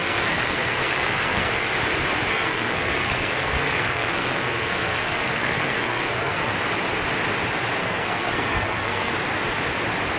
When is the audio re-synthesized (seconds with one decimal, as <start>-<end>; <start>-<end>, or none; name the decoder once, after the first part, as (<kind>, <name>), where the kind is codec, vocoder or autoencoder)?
0.0-1.7 (codec, SNAC); 2.3-6.5; 7.8-9.1